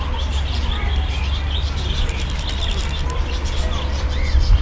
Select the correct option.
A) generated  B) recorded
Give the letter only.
B